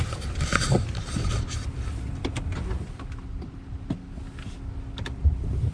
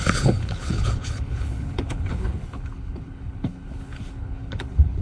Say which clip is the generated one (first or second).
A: second